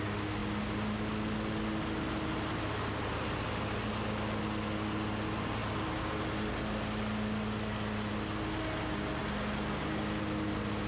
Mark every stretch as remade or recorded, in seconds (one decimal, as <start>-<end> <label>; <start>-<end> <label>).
0.0-10.9 recorded